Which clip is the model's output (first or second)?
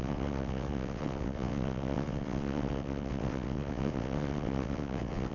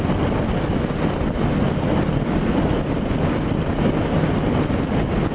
first